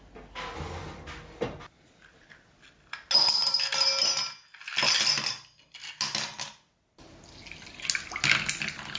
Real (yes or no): yes